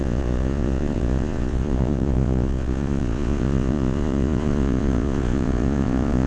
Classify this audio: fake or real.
fake